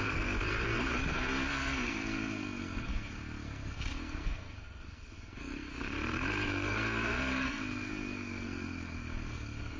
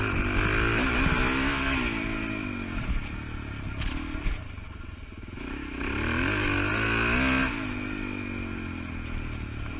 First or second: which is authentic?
second